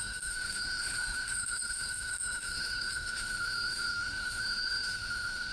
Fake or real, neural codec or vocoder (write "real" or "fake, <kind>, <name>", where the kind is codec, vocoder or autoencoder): fake, autoencoder, DAC-VAE